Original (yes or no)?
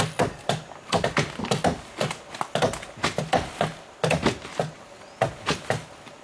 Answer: yes